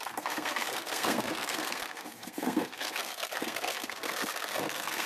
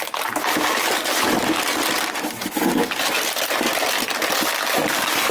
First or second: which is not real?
first